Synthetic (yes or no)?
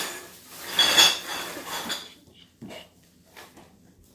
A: no